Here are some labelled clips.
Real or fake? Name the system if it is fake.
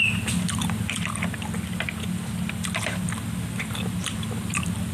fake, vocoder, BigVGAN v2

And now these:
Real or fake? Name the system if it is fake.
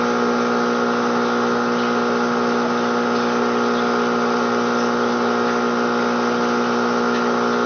real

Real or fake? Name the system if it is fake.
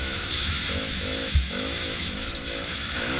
fake, autoencoder, DAC-VAE